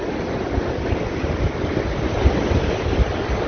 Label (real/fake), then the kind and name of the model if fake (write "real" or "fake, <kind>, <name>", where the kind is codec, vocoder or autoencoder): real